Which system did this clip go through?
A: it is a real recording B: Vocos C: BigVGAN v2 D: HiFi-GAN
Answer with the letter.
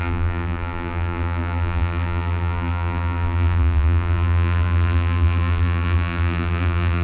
C